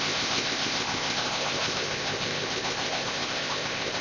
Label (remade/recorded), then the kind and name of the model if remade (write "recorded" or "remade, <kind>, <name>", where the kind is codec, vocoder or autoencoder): remade, codec, ZipCodec